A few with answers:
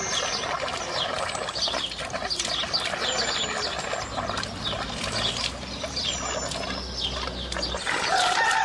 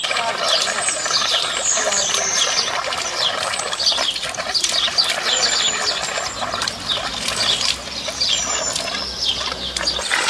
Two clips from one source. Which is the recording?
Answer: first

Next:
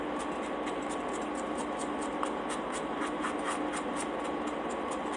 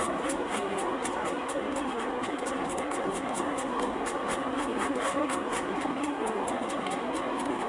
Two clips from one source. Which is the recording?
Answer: first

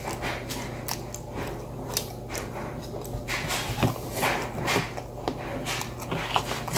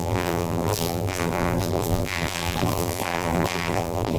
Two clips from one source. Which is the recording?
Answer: first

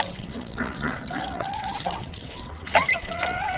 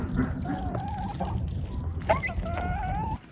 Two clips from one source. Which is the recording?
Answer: second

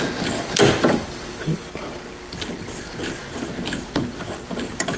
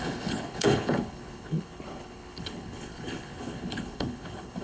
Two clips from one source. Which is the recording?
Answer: first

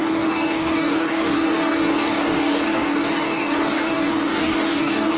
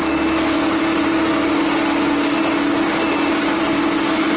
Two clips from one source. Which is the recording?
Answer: second